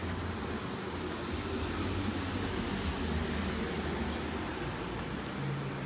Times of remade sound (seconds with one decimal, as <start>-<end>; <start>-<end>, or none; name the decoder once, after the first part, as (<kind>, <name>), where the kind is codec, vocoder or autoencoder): none